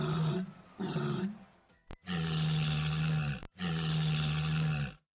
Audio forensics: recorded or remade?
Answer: recorded